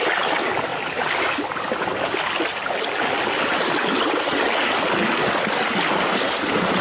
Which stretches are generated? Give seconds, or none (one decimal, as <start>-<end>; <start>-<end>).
none